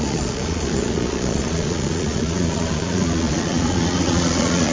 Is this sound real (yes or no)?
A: no